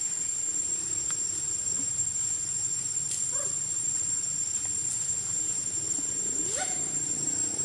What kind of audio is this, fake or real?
fake